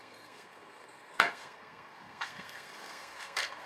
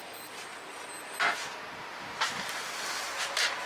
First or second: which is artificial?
first